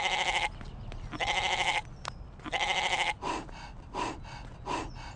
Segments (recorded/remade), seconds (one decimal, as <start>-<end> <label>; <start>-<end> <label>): 0.0-5.2 recorded